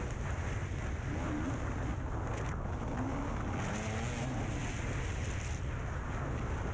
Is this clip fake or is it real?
real